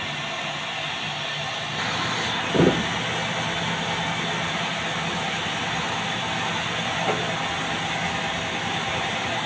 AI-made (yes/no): no